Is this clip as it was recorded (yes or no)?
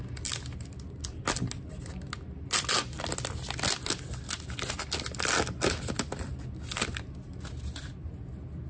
yes